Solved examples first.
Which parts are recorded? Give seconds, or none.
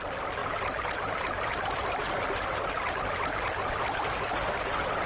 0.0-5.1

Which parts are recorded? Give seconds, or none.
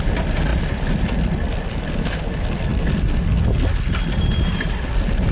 0.0-5.3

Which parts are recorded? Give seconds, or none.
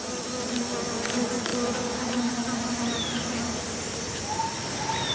0.0-1.5; 4.2-5.1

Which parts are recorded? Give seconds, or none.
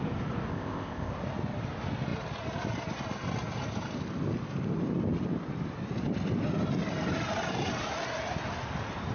0.0-0.5; 1.1-9.1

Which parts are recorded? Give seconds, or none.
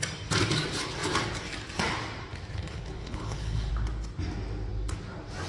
0.0-2.6; 3.7-5.5